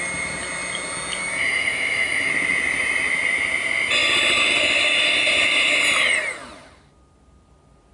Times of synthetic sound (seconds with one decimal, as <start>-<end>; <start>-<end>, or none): 1.2-2.3